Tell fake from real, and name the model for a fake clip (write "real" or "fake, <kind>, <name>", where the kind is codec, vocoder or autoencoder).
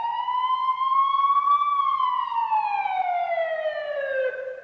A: real